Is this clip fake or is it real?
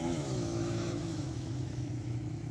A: fake